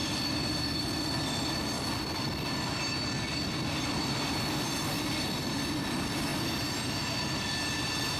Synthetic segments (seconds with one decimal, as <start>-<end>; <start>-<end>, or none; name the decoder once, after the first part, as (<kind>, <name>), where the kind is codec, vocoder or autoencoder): none